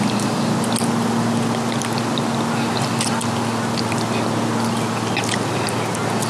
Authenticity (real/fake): real